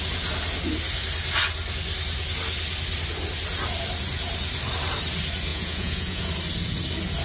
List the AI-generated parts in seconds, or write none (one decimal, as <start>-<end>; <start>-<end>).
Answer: 5.5-6.2